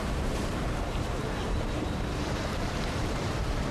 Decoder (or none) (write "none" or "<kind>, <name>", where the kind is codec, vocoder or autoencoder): vocoder, BigVGAN v2